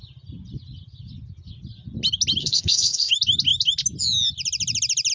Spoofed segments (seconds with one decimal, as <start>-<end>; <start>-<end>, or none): 2.4-3.1